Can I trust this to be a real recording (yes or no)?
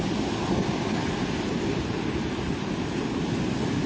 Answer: yes